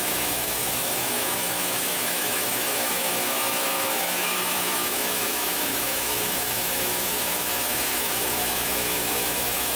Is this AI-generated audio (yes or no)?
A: yes